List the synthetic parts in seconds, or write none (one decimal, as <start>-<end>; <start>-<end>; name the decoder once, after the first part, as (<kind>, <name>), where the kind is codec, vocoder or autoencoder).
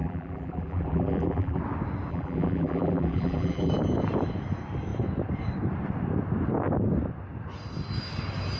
0.0-1.6 (vocoder, BigVGAN v2); 2.1-3.7